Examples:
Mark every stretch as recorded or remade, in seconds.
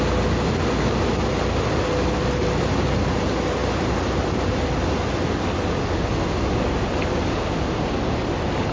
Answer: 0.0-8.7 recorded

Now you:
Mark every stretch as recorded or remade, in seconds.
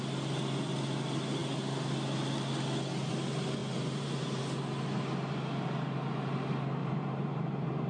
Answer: 0.0-3.6 recorded; 3.6-4.4 remade; 4.4-6.8 recorded; 6.8-7.9 remade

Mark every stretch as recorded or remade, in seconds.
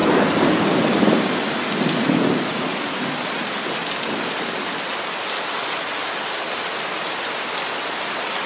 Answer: 0.0-8.5 recorded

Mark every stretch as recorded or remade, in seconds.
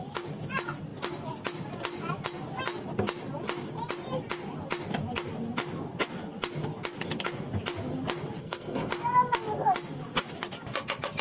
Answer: 0.0-8.4 recorded; 8.4-8.9 remade; 8.9-11.2 recorded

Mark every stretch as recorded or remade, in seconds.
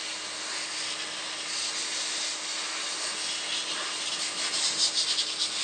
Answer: 0.0-5.6 recorded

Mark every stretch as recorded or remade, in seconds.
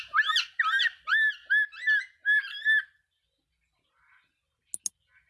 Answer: 0.0-5.3 recorded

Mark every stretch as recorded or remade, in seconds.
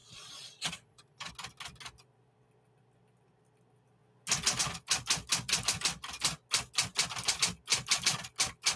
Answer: 0.0-1.3 remade; 1.3-8.8 recorded